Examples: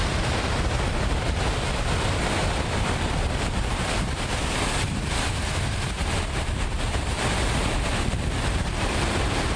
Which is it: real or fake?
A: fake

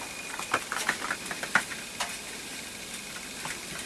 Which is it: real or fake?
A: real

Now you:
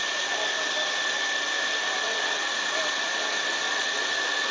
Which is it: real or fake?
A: real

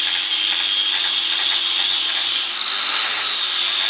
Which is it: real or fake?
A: real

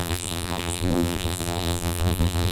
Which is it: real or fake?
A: fake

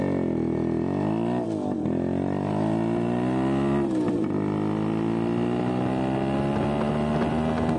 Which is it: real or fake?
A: real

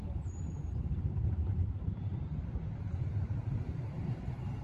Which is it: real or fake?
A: fake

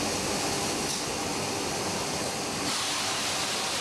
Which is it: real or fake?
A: real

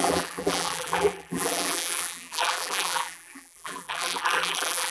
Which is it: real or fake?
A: fake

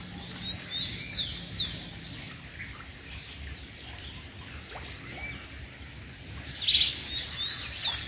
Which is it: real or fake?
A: real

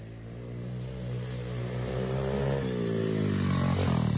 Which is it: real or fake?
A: real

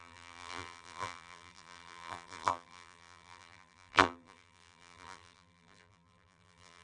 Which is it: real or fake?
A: fake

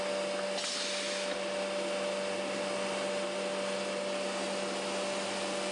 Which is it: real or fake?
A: real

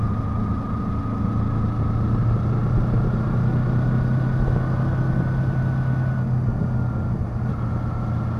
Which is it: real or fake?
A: real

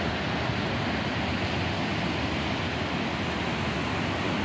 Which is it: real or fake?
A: real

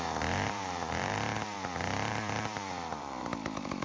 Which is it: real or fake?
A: fake